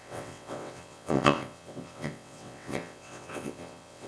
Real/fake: fake